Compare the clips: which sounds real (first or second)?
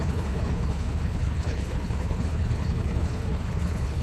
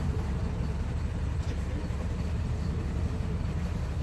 second